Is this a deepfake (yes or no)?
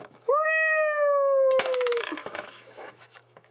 yes